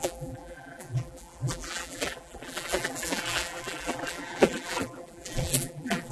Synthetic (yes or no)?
yes